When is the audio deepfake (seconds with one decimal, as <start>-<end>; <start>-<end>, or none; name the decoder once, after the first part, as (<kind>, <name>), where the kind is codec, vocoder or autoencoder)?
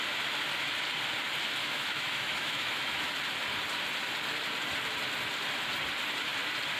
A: 1.6-3.1 (autoencoder, DAC-VAE)